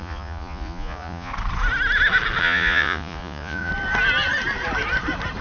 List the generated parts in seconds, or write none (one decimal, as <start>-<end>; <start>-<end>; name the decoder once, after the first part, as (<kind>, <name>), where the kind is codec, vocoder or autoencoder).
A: 0.0-1.3 (vocoder, Vocos); 2.4-3.7